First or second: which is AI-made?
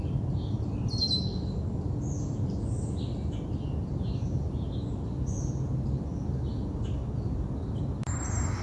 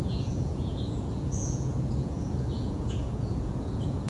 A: second